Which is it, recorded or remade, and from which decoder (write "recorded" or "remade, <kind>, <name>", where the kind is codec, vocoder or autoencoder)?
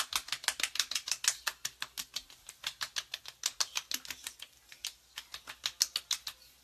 recorded